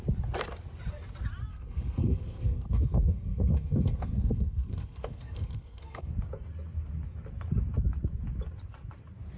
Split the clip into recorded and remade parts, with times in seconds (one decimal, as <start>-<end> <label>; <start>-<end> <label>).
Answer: 0.0-1.5 recorded; 1.5-6.1 remade; 6.1-9.4 recorded